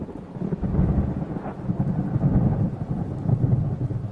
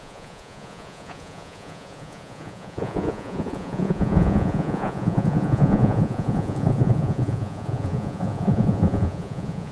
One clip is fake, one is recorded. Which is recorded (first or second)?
first